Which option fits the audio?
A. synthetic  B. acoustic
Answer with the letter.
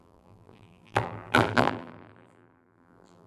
A